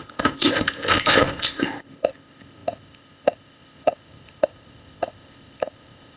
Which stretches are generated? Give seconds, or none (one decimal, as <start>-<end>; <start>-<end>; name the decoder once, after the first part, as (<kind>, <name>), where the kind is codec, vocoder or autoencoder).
0.0-6.2 (codec, ZipCodec)